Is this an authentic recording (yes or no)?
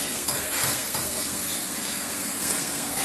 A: no